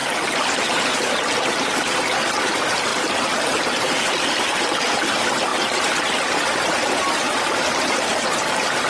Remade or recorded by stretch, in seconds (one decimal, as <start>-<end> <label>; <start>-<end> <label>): 0.0-2.0 remade; 2.0-2.9 recorded; 2.9-5.1 remade; 5.1-8.9 recorded